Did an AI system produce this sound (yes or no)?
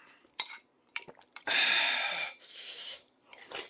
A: yes